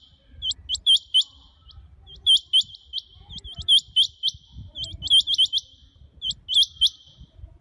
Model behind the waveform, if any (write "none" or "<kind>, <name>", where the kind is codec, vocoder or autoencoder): none